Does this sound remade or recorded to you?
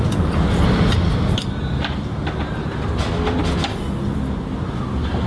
recorded